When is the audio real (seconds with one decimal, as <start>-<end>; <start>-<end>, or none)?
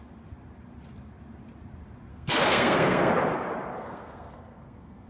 0.0-2.1; 3.1-3.7